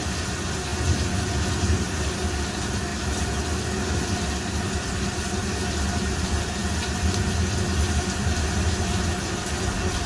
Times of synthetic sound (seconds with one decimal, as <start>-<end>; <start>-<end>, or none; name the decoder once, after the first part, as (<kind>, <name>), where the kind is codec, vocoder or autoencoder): none